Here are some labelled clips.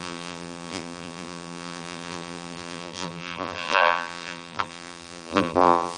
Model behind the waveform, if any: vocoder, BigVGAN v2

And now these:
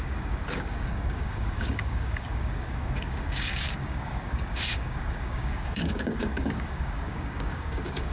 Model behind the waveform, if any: codec, DAC